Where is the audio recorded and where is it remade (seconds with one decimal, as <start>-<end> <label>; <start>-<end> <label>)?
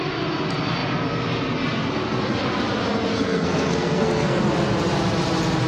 0.0-3.1 recorded; 3.1-4.4 remade; 4.4-5.7 recorded